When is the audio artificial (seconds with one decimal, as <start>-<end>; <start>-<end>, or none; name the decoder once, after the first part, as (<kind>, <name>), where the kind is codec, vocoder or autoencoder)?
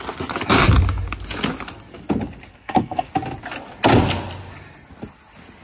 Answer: 2.5-3.1 (codec, SNAC)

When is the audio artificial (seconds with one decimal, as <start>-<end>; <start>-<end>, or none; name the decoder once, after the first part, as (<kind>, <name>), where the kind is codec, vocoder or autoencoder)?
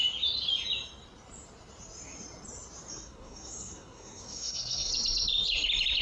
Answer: 2.9-4.9 (codec, SNAC)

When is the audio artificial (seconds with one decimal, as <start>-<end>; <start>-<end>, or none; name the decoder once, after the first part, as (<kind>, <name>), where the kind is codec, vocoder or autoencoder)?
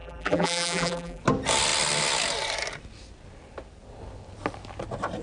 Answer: 0.0-1.2 (vocoder, BigVGAN v2)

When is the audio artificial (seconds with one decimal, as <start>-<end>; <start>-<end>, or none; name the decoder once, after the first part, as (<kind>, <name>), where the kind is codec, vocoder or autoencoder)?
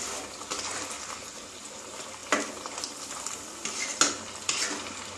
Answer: none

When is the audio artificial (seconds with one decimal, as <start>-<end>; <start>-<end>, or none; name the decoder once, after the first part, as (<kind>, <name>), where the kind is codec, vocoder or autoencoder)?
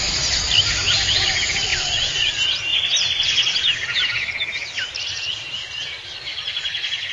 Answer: 1.7-2.3 (vocoder, Vocos)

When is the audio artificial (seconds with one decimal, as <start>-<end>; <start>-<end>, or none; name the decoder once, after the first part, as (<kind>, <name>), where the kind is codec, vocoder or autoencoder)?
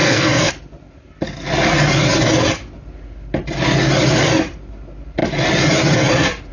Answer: 0.0-0.5 (codec, SNAC)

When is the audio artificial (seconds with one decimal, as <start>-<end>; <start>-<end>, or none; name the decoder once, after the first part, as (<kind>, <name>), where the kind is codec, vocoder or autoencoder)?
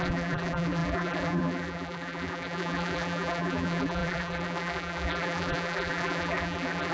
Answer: 0.0-6.9 (vocoder, BigVGAN v2)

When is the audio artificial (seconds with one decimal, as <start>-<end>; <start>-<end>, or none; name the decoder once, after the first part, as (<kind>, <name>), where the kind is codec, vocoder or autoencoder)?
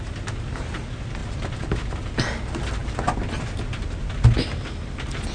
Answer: 1.2-1.9 (vocoder, BigVGAN v2)